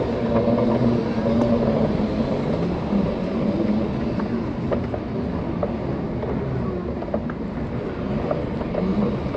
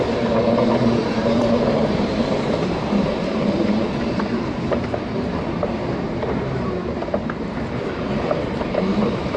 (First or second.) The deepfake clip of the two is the second